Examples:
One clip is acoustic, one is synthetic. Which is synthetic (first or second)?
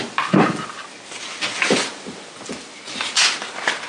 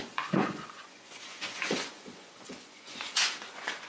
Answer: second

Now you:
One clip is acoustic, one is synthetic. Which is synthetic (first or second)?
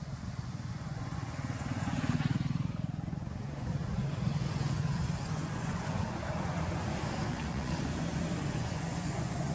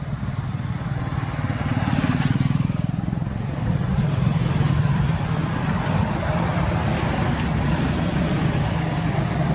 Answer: first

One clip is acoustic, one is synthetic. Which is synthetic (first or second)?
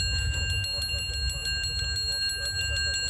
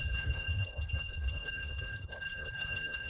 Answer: second